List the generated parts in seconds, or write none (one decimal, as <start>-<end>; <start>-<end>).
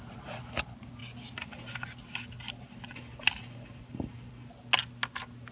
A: none